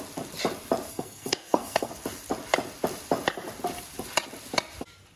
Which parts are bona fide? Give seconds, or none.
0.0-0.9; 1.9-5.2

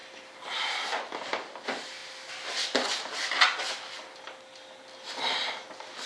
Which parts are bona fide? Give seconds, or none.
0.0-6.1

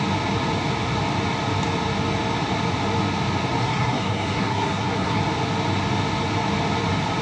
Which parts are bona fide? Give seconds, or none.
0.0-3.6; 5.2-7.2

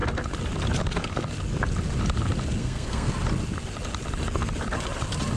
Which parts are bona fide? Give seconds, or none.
0.0-2.6; 3.1-5.4